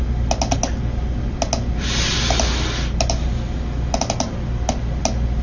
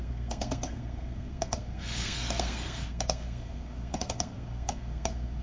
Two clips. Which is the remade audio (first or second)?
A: second